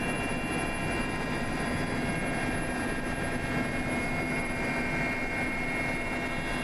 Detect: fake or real real